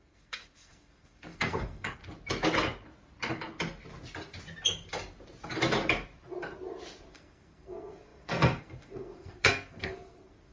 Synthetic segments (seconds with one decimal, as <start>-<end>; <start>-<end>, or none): 0.0-2.0; 7.1-10.5